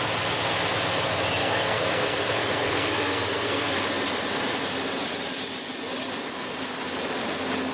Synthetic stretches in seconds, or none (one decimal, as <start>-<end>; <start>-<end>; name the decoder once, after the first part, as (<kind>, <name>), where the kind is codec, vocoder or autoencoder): 1.4-3.8 (codec, SNAC)